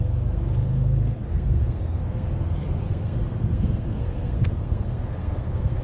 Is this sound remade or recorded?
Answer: remade